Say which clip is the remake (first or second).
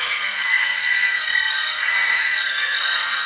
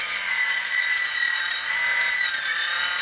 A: first